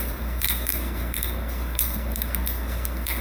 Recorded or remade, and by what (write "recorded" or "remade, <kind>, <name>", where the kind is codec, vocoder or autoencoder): remade, codec, SNAC